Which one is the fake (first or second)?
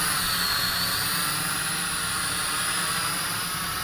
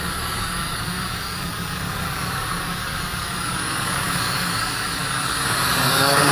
second